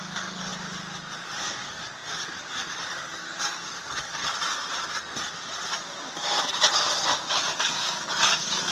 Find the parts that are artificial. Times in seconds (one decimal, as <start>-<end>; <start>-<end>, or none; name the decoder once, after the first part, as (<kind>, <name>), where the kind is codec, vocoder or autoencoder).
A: 0.0-0.5 (codec, DAC); 1.2-4.2; 7.3-8.7